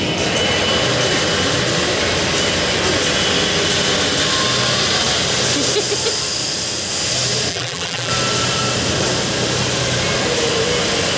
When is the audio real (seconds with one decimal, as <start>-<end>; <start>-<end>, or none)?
0.0-7.5; 8.1-11.2